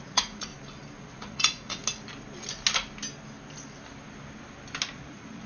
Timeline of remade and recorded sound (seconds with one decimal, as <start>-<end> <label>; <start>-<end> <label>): 0.0-0.5 remade; 0.5-1.0 recorded; 1.0-1.8 remade; 1.8-4.9 recorded; 4.9-5.5 remade